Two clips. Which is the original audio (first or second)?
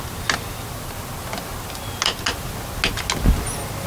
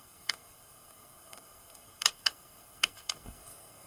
first